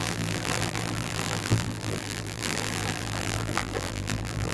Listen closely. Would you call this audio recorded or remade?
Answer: remade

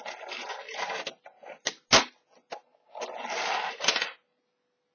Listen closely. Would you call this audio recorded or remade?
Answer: recorded